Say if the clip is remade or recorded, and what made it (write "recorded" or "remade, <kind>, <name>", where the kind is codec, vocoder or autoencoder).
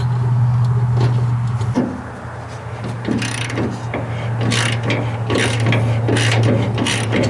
recorded